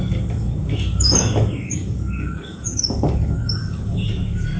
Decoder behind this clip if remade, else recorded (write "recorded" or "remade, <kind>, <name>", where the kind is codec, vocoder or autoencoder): remade, codec, DAC